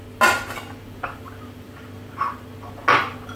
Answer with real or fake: real